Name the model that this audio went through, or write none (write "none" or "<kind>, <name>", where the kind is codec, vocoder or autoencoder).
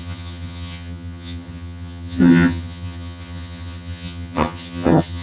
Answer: vocoder, HiFi-GAN